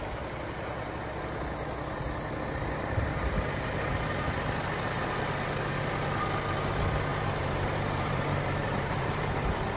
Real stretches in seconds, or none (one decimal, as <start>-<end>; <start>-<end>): 0.0-2.6; 4.4-7.1